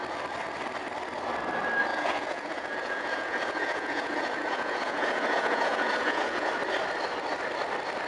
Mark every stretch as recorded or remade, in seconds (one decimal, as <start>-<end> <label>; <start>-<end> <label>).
0.0-1.9 recorded; 1.9-6.5 remade; 6.5-8.1 recorded